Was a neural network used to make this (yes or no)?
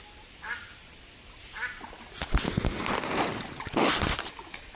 no